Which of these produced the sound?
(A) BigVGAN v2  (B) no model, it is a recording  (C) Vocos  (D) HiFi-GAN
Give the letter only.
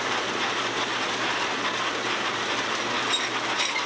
B